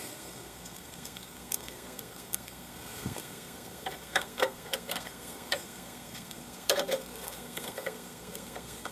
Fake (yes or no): yes